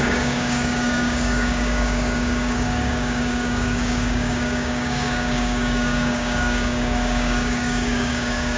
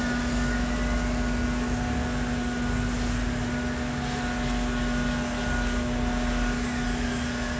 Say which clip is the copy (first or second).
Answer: first